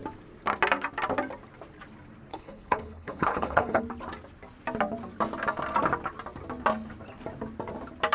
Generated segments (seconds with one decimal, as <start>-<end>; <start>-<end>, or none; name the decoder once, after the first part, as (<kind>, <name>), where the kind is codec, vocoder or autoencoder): 2.3-3.8 (codec, HILCodec)

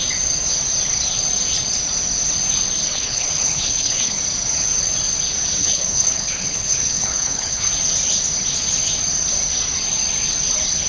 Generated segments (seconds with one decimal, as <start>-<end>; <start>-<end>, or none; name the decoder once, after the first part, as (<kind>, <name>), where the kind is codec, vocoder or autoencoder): 2.9-4.2 (codec, HILCodec); 5.6-7.7